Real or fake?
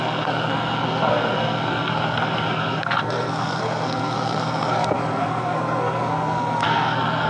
fake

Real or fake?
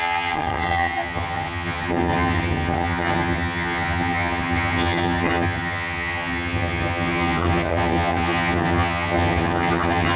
fake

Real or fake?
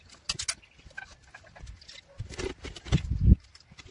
real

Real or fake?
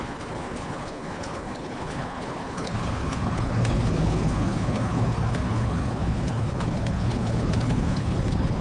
fake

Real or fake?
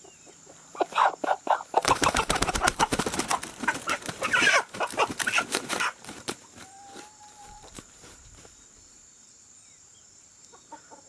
fake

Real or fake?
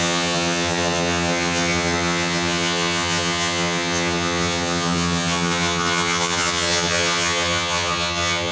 fake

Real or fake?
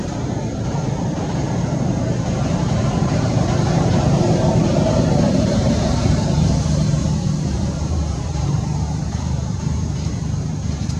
fake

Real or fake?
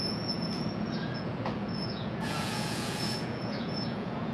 fake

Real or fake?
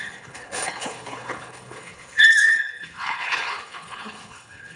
fake